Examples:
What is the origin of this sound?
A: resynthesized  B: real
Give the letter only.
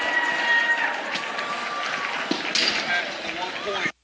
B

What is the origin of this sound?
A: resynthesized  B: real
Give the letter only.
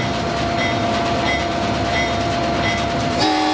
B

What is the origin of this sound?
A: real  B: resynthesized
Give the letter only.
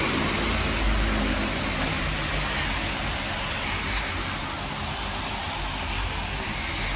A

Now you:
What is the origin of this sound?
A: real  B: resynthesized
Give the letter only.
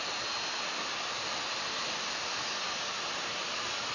A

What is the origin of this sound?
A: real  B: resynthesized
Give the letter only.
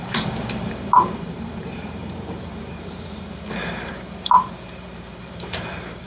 B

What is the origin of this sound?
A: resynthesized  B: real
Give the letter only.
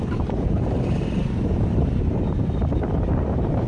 A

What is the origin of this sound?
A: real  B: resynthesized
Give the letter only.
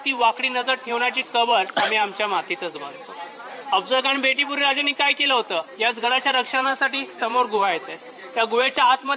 B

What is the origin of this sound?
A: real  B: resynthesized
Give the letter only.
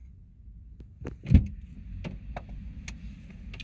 A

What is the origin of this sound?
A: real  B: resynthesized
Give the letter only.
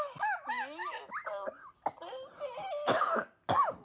A